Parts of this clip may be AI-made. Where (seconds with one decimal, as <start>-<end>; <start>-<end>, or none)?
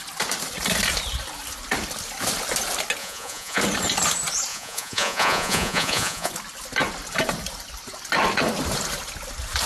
3.0-3.6; 4.5-6.3